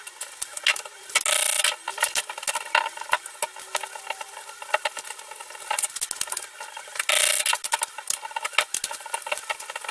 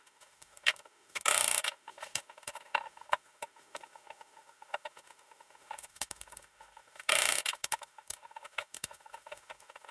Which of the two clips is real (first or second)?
first